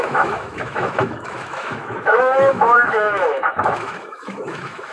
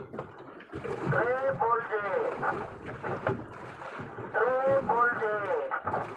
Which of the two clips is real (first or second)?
second